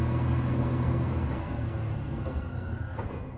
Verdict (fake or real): fake